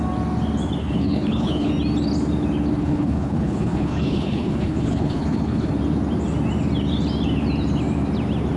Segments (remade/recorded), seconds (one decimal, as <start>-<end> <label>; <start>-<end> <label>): 0.0-0.8 recorded; 0.8-1.7 remade; 1.7-2.8 recorded; 2.8-5.7 remade; 5.7-8.6 recorded